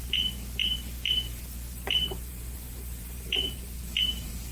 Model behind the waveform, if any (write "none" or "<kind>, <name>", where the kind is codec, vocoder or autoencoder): vocoder, BigVGAN v2